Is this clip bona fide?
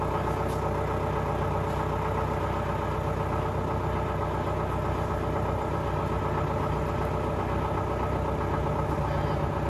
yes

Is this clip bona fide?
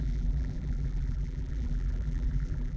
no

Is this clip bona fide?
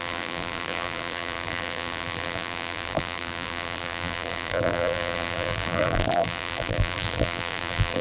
no